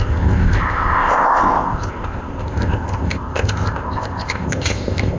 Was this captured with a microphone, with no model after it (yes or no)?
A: no